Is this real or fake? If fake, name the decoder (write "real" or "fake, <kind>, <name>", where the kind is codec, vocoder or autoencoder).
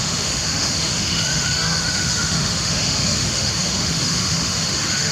fake, autoencoder, DAC-VAE